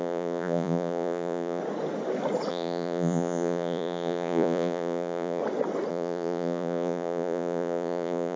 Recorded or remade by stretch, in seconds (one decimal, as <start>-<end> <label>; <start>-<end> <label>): 0.0-1.6 remade; 1.6-2.5 recorded; 2.5-5.4 remade; 5.4-5.9 recorded; 5.9-8.4 remade